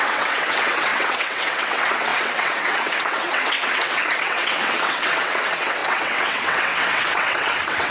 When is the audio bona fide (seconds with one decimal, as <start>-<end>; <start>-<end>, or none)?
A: none